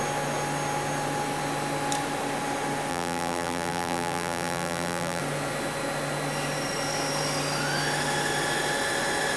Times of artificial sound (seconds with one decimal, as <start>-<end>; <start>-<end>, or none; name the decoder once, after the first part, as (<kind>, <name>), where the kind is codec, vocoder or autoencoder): 2.9-5.2 (vocoder, BigVGAN v2)